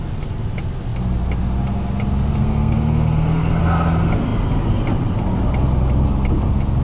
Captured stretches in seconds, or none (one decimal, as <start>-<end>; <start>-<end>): 0.0-2.4; 3.6-6.8